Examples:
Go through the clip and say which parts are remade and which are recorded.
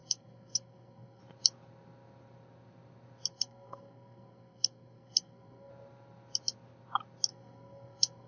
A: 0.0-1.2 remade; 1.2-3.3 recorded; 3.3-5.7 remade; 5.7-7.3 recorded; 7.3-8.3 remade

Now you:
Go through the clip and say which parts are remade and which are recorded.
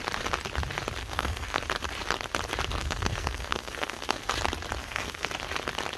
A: 0.0-1.0 recorded; 1.0-1.6 remade; 1.6-2.8 recorded; 2.8-4.3 remade; 4.3-4.8 recorded; 4.8-5.3 remade; 5.3-6.0 recorded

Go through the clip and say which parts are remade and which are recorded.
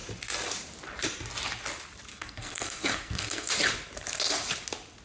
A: 0.0-2.1 recorded; 2.1-3.5 remade; 3.5-5.0 recorded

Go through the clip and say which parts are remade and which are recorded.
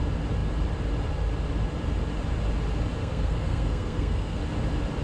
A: 0.0-3.0 recorded; 3.0-4.4 remade; 4.4-5.0 recorded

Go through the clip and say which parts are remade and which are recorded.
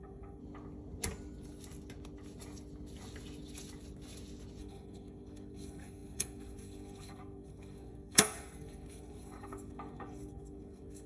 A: 0.0-0.4 remade; 0.4-4.6 recorded; 4.6-11.1 remade